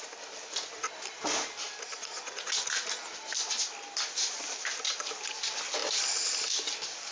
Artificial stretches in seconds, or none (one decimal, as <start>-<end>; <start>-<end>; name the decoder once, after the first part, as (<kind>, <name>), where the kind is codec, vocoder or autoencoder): 2.0-2.5 (vocoder, Vocos)